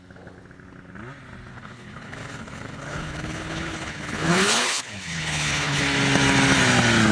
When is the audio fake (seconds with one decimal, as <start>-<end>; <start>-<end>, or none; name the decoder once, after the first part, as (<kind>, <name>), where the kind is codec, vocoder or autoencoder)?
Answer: 1.5-5.8 (codec, HILCodec)